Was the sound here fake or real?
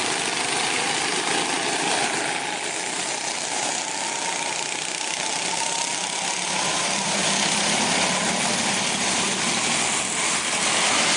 real